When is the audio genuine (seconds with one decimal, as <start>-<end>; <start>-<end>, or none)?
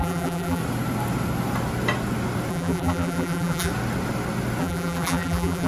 0.6-2.5; 3.7-4.6